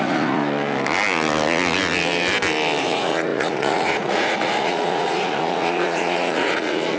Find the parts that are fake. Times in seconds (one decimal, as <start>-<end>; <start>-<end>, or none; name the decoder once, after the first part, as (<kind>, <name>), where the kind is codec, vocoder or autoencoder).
0.0-0.4 (vocoder, Vocos); 2.8-7.0